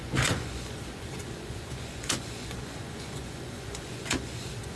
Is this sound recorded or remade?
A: remade